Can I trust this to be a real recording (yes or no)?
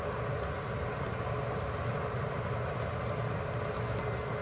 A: yes